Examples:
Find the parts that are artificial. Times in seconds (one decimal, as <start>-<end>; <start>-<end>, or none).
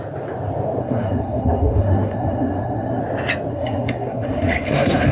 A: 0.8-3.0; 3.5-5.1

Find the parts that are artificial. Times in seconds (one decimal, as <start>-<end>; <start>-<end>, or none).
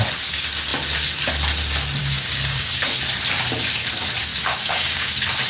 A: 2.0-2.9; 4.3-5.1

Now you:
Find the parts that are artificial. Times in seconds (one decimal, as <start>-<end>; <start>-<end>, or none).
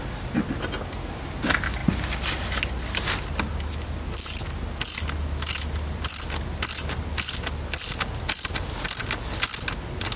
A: none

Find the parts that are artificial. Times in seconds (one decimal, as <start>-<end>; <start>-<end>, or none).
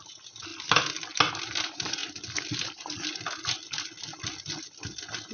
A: 0.0-0.5; 1.3-2.0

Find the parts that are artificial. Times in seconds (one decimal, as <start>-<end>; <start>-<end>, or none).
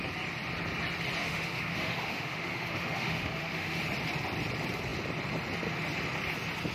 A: 1.2-3.8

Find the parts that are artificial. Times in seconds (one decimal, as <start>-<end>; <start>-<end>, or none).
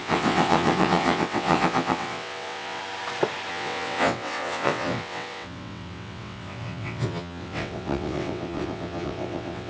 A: 0.0-2.8; 3.5-9.7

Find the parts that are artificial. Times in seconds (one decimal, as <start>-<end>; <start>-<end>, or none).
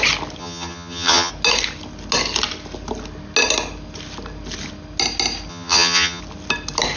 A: 0.4-1.3; 5.5-6.2